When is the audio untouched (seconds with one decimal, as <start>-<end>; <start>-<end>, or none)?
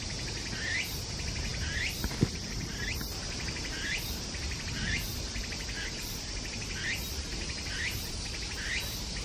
0.0-9.2